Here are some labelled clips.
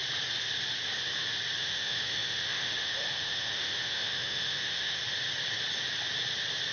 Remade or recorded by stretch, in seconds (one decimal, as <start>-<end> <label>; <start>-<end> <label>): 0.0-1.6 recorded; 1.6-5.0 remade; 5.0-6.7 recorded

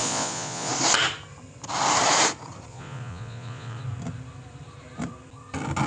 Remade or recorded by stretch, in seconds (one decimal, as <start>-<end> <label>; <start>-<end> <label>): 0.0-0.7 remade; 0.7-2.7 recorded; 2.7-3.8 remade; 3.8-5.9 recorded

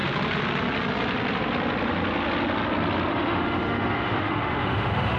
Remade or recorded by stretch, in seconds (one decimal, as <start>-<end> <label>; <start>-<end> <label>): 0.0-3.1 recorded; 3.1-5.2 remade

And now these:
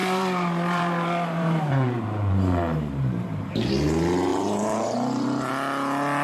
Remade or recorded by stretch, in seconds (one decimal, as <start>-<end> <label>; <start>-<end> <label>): 0.0-3.7 remade; 3.7-4.3 recorded; 4.3-5.5 remade; 5.5-6.2 recorded

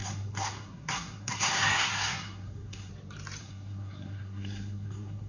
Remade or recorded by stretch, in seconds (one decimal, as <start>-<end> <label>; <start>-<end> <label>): 0.0-2.9 remade; 2.9-3.4 recorded; 3.4-5.3 remade